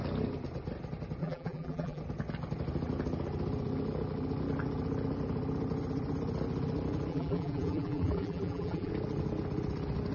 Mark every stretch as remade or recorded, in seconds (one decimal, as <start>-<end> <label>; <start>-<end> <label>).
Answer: 0.0-1.2 recorded; 1.2-2.0 remade; 2.0-7.1 recorded; 7.1-8.9 remade; 8.9-10.1 recorded